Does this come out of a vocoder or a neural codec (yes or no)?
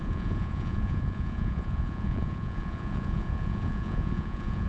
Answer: yes